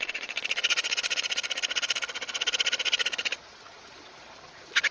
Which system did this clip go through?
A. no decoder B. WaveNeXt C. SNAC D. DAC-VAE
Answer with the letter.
A